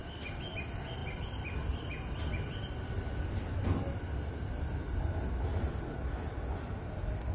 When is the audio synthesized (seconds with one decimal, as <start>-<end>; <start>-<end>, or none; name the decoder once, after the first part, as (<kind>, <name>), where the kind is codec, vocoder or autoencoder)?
0.0-0.5 (vocoder, BigVGAN v2); 1.0-3.2